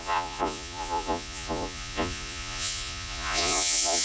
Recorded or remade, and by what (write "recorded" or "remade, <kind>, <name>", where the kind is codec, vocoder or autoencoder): remade, vocoder, Vocos